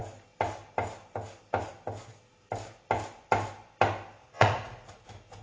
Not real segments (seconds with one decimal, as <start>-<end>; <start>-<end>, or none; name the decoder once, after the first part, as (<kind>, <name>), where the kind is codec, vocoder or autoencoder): 4.2-4.9 (vocoder, Vocos)